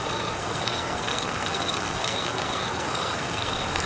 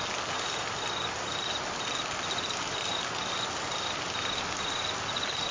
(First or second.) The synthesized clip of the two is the first